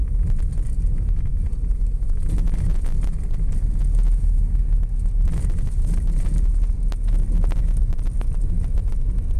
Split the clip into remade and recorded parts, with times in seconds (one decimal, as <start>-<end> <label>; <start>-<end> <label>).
0.0-9.4 recorded